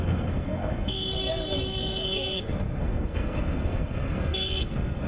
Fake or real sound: fake